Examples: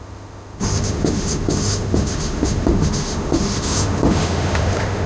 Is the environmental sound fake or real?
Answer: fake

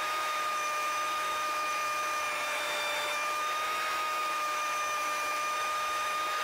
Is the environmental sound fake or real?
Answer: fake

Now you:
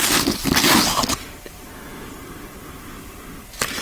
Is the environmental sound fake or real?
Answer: real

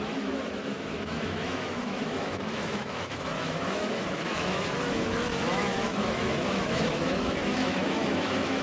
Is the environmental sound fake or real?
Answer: fake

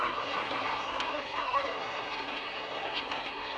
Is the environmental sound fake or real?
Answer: fake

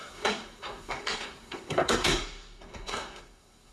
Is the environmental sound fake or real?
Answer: fake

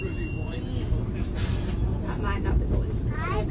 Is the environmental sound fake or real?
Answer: real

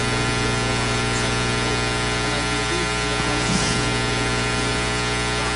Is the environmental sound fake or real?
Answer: real